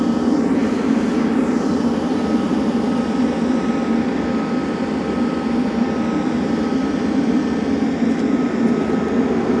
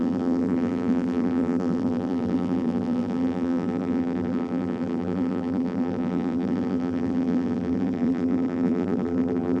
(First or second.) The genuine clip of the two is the first